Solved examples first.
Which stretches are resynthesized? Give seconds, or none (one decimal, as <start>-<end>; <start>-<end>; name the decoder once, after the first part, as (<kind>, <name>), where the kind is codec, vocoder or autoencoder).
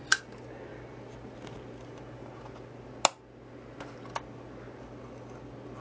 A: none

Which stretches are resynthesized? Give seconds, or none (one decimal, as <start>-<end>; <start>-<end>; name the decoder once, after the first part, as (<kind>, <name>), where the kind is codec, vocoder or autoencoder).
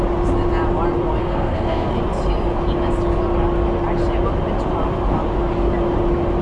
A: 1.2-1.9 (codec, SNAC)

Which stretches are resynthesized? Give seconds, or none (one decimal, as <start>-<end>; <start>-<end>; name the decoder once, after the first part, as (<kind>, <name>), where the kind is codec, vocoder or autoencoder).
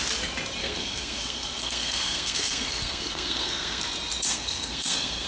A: 0.6-3.8 (codec, SNAC); 4.3-5.3